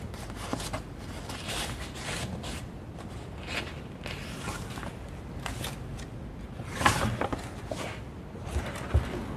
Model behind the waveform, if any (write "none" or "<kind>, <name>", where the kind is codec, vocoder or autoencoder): none